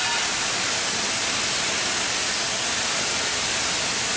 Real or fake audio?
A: real